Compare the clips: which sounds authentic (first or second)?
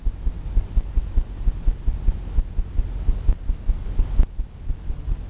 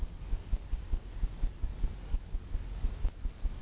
first